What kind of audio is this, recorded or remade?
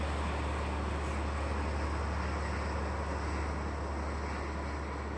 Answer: recorded